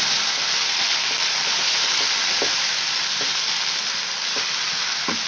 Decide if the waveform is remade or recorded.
recorded